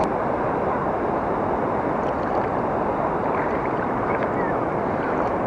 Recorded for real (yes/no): yes